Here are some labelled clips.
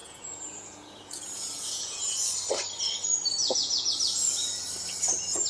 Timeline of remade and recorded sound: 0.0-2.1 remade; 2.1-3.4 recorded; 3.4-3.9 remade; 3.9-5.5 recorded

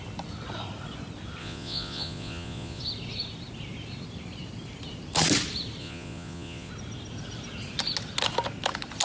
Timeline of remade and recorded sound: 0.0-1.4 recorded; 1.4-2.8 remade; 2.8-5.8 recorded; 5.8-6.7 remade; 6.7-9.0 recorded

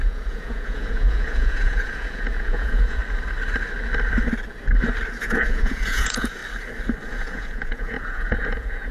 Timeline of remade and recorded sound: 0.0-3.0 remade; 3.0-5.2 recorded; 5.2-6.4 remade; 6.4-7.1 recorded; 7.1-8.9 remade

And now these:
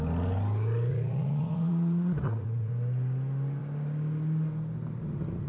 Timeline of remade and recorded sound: 0.0-0.9 recorded; 0.9-2.7 remade; 2.7-5.5 recorded

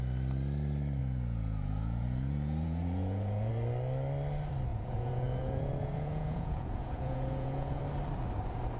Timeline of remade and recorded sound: 0.0-1.0 recorded; 1.0-3.5 remade; 3.5-4.7 recorded; 4.7-7.8 remade; 7.8-8.8 recorded

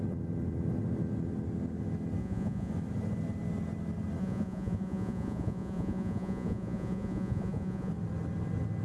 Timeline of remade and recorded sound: 0.0-2.2 recorded; 2.2-2.7 remade; 2.7-4.2 recorded; 4.2-7.9 remade; 7.9-8.8 recorded

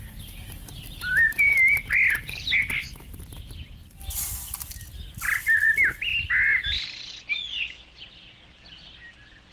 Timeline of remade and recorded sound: 0.0-9.5 recorded

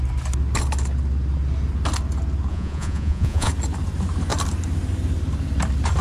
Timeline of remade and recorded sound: 0.0-2.5 recorded; 2.5-3.5 remade; 3.5-6.0 recorded